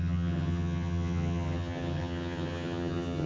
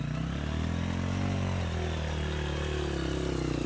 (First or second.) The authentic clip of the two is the second